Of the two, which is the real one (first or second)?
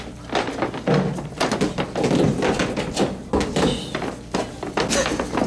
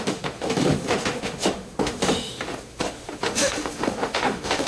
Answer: first